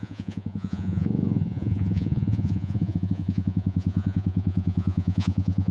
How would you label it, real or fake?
fake